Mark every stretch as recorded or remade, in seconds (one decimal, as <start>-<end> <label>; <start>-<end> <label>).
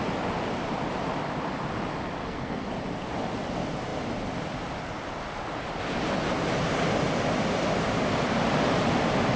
0.0-2.2 recorded; 2.2-2.7 remade; 2.7-9.4 recorded